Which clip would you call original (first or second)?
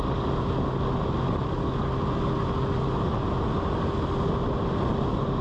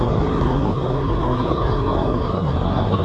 first